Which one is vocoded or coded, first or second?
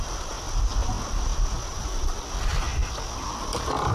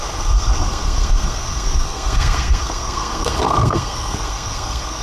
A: second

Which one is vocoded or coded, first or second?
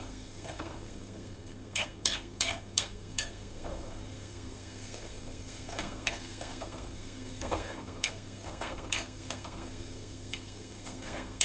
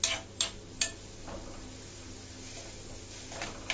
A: first